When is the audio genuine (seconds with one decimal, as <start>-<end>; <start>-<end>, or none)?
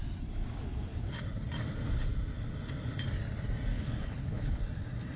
0.0-3.7; 4.6-5.2